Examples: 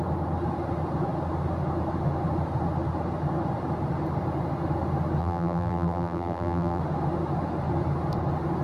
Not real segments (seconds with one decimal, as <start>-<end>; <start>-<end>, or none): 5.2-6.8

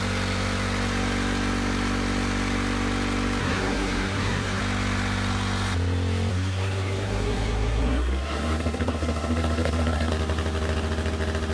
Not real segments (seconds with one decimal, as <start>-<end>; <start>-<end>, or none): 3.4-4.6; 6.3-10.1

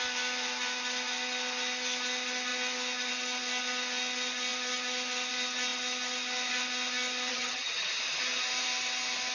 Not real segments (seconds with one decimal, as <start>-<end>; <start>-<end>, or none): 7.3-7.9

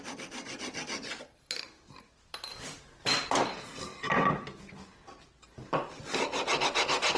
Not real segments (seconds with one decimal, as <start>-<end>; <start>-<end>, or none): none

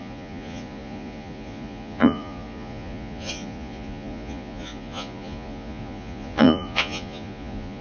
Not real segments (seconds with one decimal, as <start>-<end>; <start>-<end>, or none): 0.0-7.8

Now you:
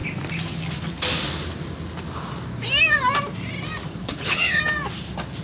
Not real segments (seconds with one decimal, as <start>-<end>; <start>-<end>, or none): 4.0-4.6